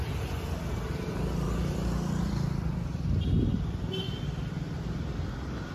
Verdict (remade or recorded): recorded